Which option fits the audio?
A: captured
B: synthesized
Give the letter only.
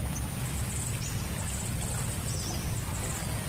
A